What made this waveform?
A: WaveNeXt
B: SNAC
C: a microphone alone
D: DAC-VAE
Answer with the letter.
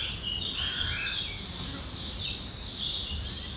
C